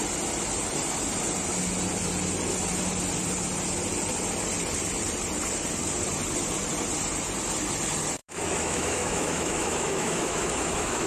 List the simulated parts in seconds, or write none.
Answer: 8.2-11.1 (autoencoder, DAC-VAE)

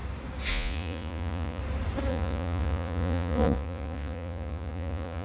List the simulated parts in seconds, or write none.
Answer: 0.5-1.6 (vocoder, Vocos); 2.1-5.2

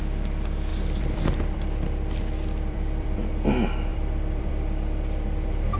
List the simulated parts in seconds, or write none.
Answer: 0.7-3.3 (vocoder, BigVGAN v2); 3.9-4.5

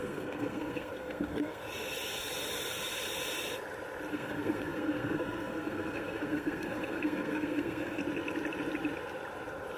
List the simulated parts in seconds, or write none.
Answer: 0.0-1.6 (codec, SNAC); 4.1-8.0

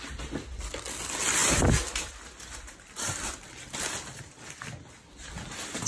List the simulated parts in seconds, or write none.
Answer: none

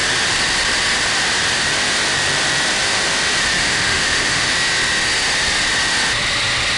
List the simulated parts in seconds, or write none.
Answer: 3.6-4.5 (autoencoder, DAC-VAE)

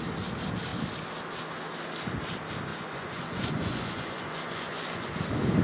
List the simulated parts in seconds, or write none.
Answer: 2.7-5.1 (vocoder, Vocos)